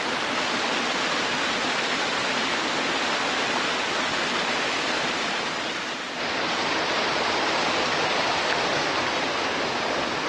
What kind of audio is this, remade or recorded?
recorded